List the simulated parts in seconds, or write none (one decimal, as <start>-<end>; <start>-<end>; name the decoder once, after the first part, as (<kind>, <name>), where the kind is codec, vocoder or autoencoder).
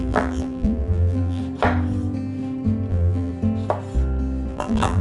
0.0-1.4 (vocoder, BigVGAN v2); 2.9-3.3; 4.5-5.0